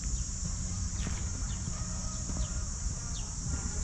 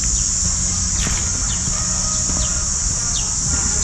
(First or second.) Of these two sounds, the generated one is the first